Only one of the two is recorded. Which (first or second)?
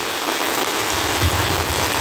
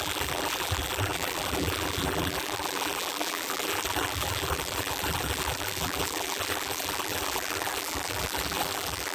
first